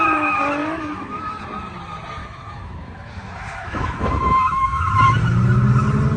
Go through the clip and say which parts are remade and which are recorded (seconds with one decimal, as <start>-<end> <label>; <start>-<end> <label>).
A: 0.0-0.6 recorded; 0.6-1.4 remade; 1.4-2.2 recorded; 2.2-4.9 remade; 4.9-6.2 recorded